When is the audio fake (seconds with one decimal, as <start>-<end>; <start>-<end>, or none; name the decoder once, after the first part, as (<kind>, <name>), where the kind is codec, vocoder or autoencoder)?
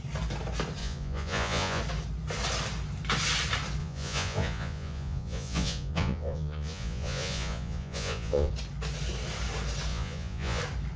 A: 0.8-1.8 (vocoder, Vocos); 3.8-8.5; 9.9-10.6